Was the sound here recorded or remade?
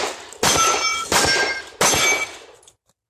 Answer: recorded